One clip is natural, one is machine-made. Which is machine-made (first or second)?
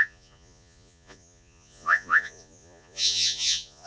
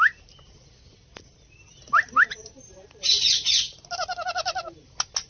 first